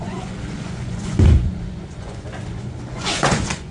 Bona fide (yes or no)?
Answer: no